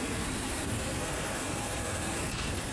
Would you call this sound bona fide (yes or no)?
no